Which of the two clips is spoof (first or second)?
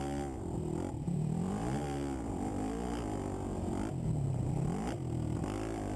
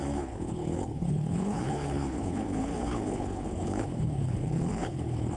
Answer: second